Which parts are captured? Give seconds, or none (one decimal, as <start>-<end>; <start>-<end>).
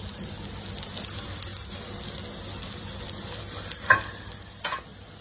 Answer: 0.0-5.2